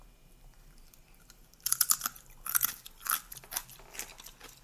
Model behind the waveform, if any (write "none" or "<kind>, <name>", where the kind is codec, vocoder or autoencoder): none